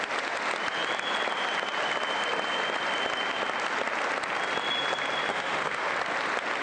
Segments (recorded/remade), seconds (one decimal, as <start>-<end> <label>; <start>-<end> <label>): 0.0-5.3 recorded; 5.3-5.9 remade; 5.9-6.6 recorded